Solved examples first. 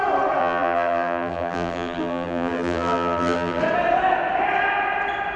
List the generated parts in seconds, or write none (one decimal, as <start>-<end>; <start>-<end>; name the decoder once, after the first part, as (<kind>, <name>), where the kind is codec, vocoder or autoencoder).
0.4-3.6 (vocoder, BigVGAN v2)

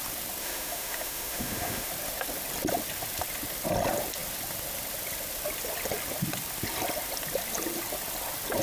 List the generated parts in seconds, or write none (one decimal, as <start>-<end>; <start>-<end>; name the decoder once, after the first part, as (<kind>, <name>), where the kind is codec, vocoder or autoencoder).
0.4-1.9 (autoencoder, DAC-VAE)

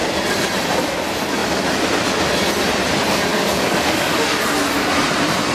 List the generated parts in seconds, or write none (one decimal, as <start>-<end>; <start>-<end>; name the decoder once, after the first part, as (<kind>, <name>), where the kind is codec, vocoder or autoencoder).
3.3-4.4 (codec, DAC)

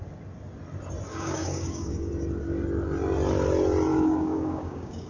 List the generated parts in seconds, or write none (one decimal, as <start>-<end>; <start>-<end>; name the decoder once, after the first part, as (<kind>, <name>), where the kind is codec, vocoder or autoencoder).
1.1-2.1 (codec, DAC); 3.9-5.1